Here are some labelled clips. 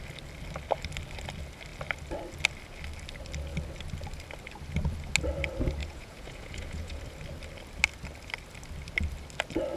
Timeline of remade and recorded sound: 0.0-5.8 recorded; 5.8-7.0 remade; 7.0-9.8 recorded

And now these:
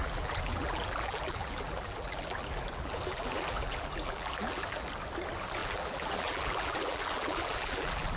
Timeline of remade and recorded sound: 0.0-4.9 remade; 4.9-5.6 recorded; 5.6-8.2 remade